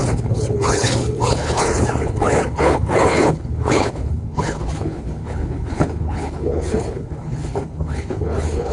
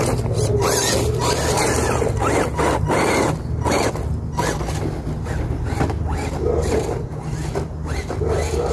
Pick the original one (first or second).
second